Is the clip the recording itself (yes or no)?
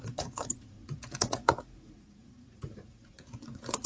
no